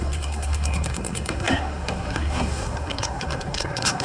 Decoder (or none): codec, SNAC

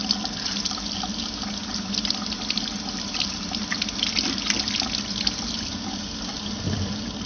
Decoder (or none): none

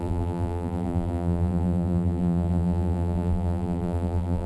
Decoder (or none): vocoder, BigVGAN v2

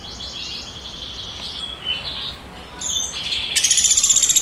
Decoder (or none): none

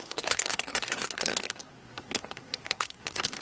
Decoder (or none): codec, SNAC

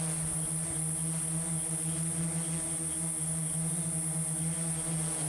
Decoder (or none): none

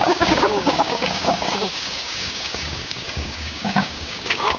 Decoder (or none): codec, DAC